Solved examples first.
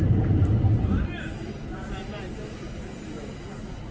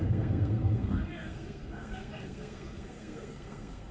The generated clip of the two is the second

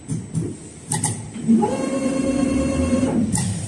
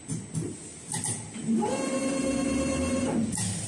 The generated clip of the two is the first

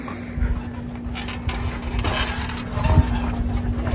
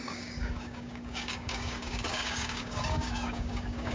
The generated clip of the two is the second